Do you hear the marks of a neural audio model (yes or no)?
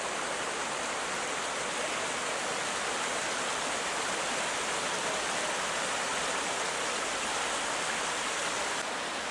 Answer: yes